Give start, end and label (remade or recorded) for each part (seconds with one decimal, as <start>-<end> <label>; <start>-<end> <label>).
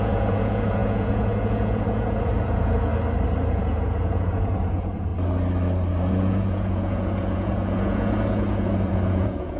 0.0-2.9 remade; 2.9-3.5 recorded; 3.5-5.1 remade; 5.1-6.1 recorded; 6.1-9.6 remade